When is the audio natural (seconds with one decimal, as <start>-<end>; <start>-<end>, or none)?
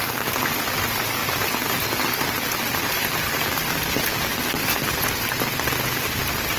0.0-6.6